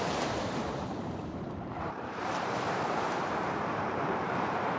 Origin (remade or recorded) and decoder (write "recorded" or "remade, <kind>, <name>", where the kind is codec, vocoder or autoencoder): remade, vocoder, BigVGAN v2